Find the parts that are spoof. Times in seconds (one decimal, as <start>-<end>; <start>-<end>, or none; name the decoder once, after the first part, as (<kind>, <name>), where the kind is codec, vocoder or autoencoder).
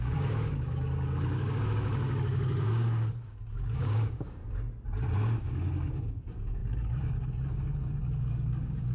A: 0.0-4.4 (codec, DAC); 5.4-8.9